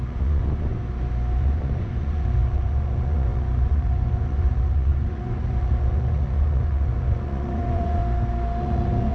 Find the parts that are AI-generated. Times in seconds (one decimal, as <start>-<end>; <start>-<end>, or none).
0.0-0.7; 1.4-8.0; 8.6-9.1